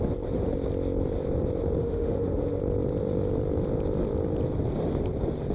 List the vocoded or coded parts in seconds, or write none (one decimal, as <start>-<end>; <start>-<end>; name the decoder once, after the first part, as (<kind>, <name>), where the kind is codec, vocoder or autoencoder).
1.8-2.6 (autoencoder, DAC-VAE)